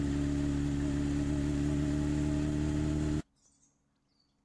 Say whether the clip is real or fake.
real